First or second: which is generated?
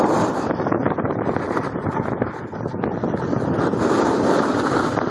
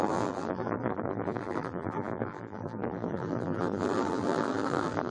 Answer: second